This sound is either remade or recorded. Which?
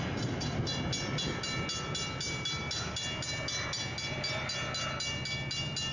recorded